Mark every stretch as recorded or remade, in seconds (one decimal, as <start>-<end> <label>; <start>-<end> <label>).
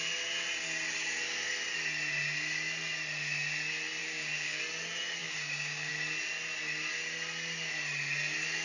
0.0-4.0 recorded; 4.0-4.6 remade; 4.6-5.2 recorded; 5.2-5.9 remade; 5.9-8.6 recorded